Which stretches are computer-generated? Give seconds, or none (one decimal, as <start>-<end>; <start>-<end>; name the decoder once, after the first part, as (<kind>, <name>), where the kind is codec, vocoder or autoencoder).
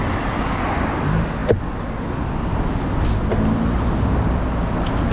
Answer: none